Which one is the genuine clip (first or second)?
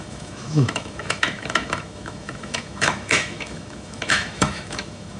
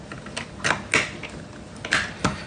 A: second